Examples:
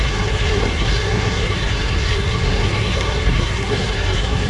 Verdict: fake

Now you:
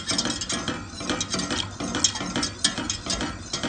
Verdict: real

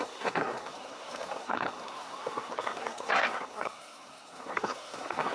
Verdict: fake